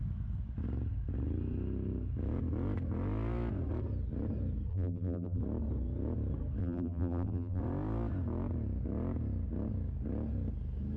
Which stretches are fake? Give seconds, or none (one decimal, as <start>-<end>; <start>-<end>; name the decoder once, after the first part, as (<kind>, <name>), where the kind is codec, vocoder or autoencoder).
4.7-5.4 (vocoder, BigVGAN v2); 6.6-7.6